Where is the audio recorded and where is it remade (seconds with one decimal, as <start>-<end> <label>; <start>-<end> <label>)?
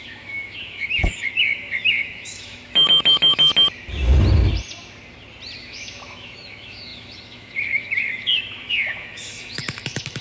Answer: 0.0-3.5 remade; 3.5-5.6 recorded; 5.6-10.2 remade